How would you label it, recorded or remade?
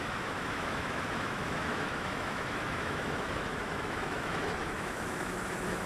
remade